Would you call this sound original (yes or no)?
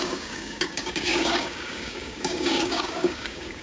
no